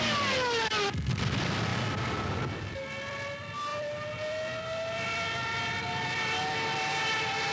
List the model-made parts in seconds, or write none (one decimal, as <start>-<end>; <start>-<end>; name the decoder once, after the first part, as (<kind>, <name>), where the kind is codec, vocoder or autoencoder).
none